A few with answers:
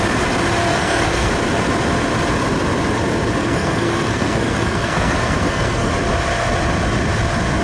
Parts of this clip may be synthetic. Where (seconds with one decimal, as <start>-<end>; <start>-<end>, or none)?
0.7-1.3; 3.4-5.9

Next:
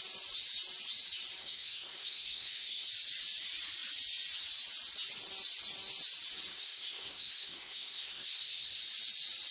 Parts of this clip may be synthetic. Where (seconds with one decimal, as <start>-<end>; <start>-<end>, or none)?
1.4-2.9; 6.5-8.8

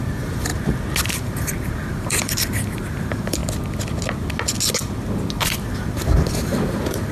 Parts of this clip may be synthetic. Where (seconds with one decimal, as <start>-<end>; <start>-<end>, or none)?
0.0-0.5; 1.1-3.4; 5.4-7.1